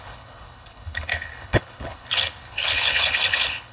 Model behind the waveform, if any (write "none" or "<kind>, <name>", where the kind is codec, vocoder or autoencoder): codec, HILCodec